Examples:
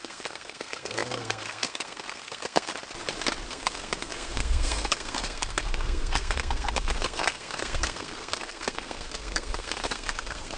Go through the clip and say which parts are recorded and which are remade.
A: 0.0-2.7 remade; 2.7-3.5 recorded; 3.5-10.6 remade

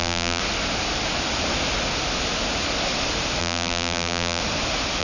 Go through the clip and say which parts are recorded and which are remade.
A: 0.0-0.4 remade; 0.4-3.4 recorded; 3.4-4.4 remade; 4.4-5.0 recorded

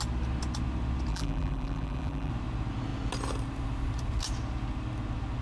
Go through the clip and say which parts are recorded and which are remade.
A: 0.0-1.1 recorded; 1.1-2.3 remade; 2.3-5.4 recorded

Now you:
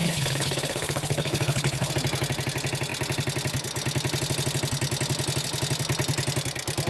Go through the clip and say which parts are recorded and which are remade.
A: 0.0-1.9 remade; 1.9-6.9 recorded